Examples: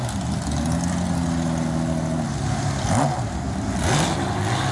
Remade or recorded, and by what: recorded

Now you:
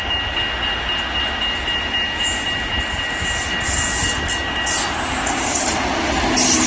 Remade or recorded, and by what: recorded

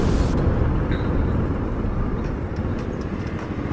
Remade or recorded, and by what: recorded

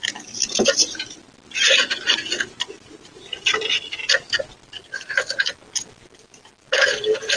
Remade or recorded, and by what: recorded